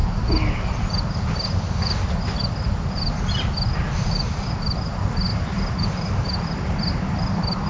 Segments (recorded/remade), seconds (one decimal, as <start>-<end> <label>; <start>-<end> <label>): 0.0-7.7 recorded